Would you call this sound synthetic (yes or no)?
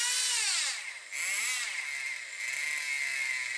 no